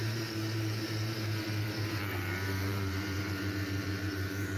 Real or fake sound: fake